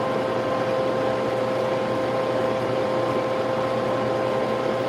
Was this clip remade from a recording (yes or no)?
no